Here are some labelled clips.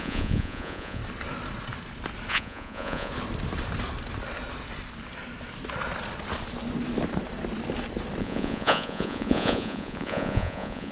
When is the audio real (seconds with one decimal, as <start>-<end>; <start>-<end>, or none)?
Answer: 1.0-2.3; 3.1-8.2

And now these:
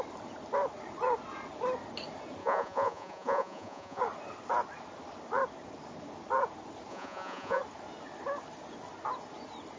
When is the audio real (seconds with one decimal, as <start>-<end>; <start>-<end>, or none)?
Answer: 0.0-2.4; 4.0-6.9; 7.6-9.8

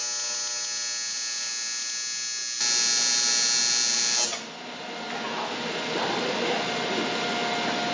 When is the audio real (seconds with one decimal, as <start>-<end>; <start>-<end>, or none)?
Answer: 0.0-7.9

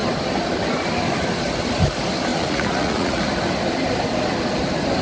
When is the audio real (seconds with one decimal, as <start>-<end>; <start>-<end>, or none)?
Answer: 0.0-2.3; 3.2-5.0